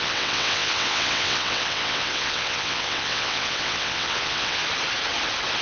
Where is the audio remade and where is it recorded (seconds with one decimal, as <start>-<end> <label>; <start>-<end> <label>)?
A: 0.0-4.6 remade; 4.6-5.6 recorded